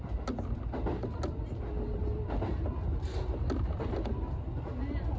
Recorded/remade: recorded